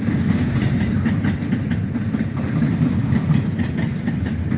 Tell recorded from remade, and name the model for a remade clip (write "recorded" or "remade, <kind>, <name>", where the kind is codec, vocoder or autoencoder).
recorded